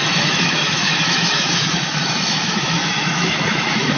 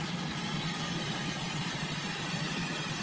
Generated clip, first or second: first